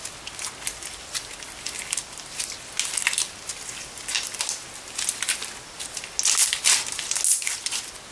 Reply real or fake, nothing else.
real